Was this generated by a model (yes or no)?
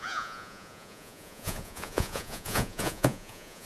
yes